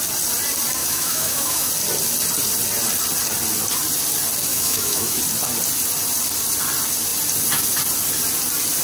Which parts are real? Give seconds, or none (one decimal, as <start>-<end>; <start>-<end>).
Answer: 0.0-0.8; 1.7-4.5; 5.2-8.8